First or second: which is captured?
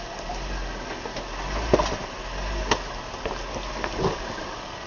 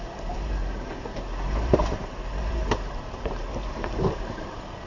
first